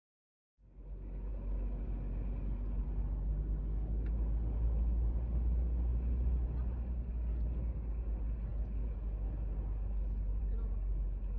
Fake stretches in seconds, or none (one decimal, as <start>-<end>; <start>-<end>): none